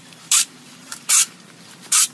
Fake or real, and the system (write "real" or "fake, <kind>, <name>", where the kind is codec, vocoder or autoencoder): fake, vocoder, BigVGAN v2